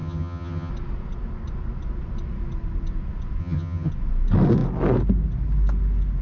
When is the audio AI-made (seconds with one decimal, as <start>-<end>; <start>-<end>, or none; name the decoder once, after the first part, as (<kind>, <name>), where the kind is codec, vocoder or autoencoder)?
0.0-0.7 (vocoder, HiFi-GAN); 3.4-3.9

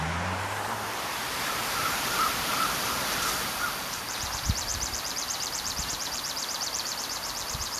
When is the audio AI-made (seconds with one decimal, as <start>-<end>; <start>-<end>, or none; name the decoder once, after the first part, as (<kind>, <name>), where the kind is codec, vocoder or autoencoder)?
0.0-7.8 (vocoder, BigVGAN v2)

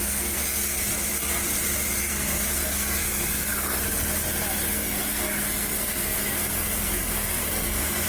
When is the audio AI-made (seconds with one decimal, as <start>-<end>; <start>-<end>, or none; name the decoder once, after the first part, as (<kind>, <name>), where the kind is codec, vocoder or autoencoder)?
0.0-0.9 (codec, SNAC); 2.0-3.7; 4.7-8.1

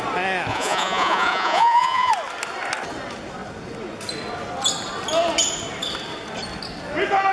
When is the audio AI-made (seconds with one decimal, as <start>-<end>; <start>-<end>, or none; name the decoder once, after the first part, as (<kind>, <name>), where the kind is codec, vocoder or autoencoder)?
0.5-2.1 (vocoder, Vocos)

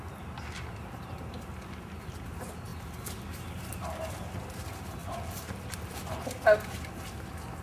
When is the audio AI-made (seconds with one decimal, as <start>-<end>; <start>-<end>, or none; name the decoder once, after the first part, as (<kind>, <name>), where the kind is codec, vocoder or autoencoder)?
none

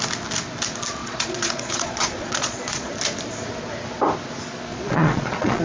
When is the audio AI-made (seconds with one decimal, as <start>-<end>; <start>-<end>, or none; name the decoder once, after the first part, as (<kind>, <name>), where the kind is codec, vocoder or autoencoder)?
1.0-2.9 (vocoder, Vocos); 4.7-5.6

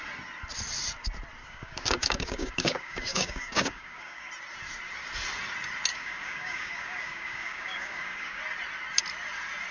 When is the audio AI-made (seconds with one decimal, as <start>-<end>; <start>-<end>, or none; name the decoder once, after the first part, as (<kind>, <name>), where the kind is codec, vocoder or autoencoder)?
1.4-4.3 (codec, DAC); 5.9-8.4